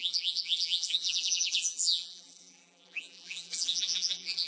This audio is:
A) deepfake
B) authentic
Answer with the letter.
A